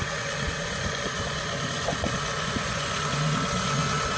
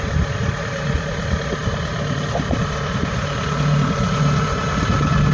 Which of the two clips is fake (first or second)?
first